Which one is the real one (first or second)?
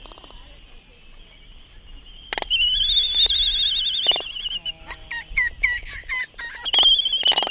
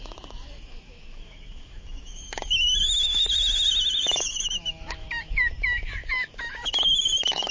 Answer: first